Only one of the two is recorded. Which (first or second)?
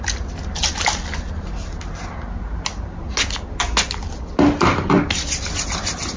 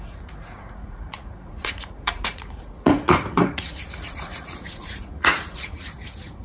first